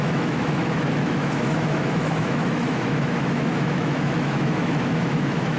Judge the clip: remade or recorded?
remade